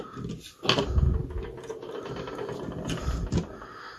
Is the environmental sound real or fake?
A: real